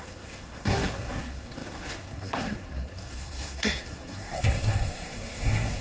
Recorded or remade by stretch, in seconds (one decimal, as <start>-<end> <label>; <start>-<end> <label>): 0.0-5.8 remade